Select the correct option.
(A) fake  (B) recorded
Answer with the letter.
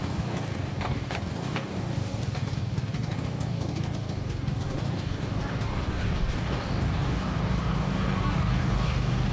A